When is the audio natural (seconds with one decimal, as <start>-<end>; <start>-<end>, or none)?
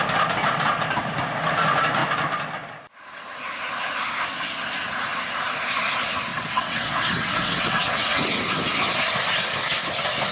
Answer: 0.0-6.3; 8.4-10.3